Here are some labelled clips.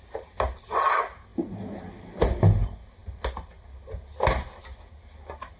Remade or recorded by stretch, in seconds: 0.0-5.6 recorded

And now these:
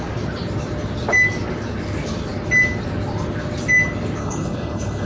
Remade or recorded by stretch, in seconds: 0.0-4.2 recorded; 4.2-5.1 remade